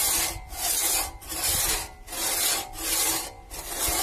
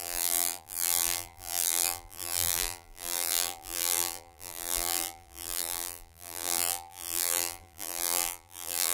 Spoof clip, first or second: second